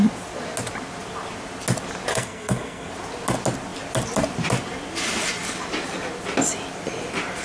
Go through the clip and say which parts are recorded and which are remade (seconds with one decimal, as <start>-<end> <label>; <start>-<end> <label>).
0.0-2.1 recorded; 2.1-2.9 remade; 2.9-7.4 recorded